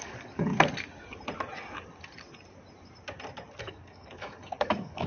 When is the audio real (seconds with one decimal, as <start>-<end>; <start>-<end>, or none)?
0.5-3.6